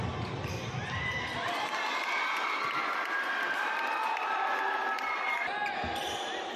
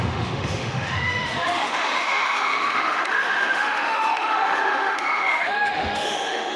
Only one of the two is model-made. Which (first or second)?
second